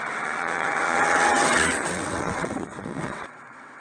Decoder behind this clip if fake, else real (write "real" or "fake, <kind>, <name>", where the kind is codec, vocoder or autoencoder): fake, vocoder, WaveNeXt